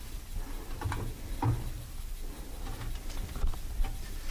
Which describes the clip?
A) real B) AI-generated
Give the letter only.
A